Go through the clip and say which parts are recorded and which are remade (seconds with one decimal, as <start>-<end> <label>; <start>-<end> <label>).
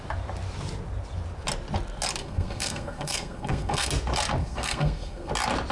0.0-2.2 recorded; 2.2-3.9 remade; 3.9-4.4 recorded; 4.4-5.3 remade; 5.3-5.7 recorded